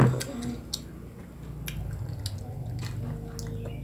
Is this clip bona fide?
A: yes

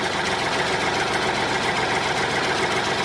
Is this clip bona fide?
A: yes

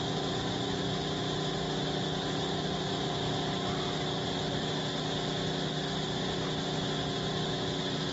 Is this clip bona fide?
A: yes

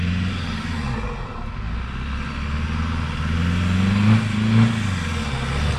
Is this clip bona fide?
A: yes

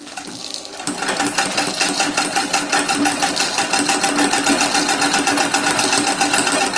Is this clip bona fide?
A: yes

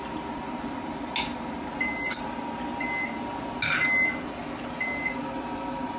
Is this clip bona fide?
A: yes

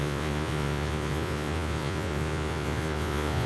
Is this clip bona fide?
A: no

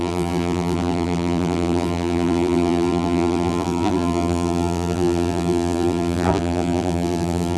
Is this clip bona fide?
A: no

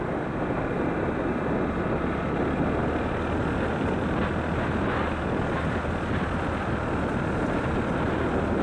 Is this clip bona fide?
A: yes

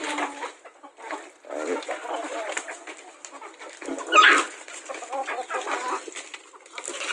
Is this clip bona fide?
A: yes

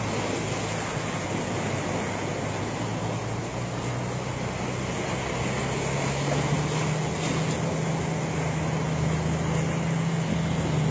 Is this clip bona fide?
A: yes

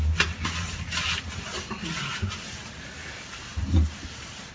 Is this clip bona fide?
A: yes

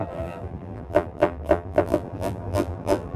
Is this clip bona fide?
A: no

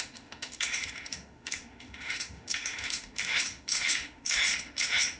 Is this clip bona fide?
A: no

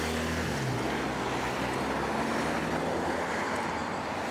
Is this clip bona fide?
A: yes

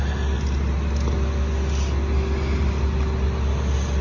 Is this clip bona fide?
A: yes